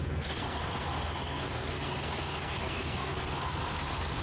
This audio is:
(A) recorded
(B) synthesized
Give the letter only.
B